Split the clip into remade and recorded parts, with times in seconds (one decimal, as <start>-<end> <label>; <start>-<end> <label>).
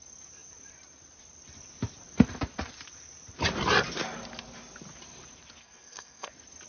0.0-5.6 recorded; 5.6-6.3 remade; 6.3-6.7 recorded